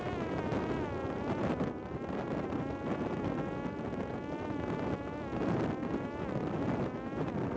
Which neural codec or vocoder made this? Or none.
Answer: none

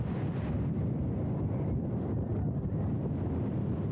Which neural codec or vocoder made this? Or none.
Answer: none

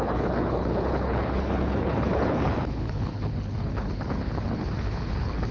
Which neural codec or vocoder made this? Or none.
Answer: codec, HILCodec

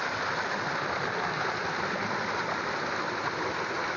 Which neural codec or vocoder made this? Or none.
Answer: none